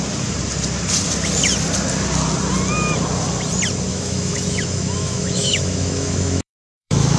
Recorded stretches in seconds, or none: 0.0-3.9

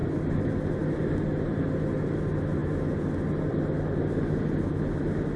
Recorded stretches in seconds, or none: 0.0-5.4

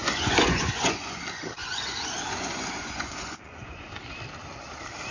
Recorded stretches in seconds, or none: 1.2-1.6; 4.0-5.1

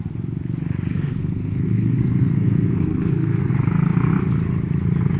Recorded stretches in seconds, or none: 0.0-0.9; 3.5-5.2

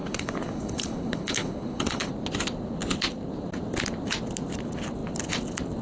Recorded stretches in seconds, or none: 2.1-5.8

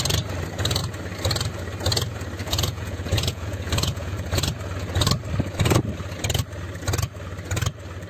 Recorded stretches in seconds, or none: 0.0-2.4; 4.5-8.1

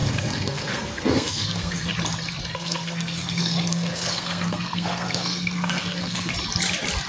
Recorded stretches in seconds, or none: 1.9-2.5; 6.3-7.1